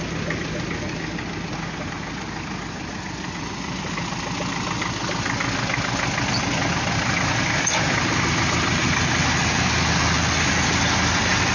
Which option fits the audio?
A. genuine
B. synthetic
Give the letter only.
A